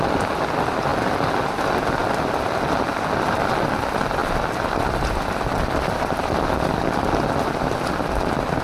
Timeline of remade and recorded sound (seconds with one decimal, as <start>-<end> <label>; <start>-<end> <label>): 0.0-8.6 recorded